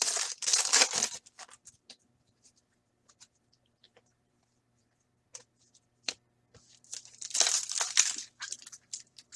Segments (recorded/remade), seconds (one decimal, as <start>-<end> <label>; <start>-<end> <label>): 0.0-0.5 remade; 0.5-1.7 recorded; 1.7-5.5 remade; 5.5-8.6 recorded; 8.6-9.4 remade